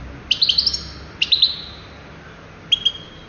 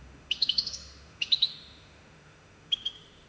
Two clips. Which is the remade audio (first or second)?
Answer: second